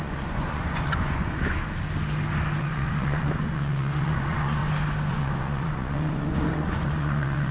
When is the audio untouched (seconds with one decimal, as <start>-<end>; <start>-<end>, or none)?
1.6-2.6; 4.6-5.1